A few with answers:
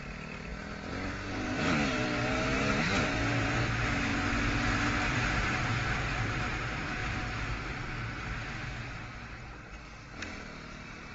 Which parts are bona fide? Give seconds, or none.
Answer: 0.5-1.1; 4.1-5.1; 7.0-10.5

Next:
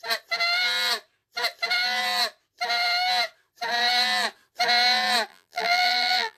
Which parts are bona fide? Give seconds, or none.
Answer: 0.0-5.3